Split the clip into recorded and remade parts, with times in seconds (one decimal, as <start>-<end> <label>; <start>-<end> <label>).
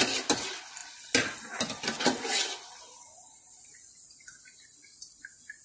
0.0-5.6 recorded